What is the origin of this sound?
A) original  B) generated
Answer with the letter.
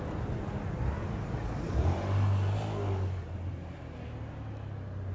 A